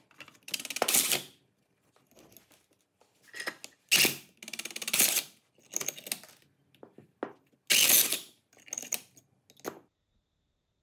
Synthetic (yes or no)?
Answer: no